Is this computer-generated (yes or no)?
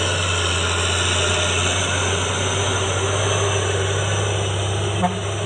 no